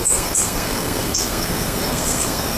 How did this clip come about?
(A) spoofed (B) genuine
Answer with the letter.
A